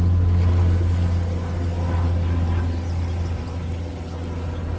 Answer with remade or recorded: recorded